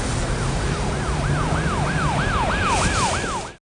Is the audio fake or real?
real